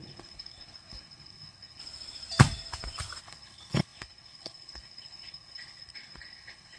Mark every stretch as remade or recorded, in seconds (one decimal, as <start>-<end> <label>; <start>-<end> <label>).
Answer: 0.0-1.8 remade; 1.8-3.2 recorded; 3.2-6.8 remade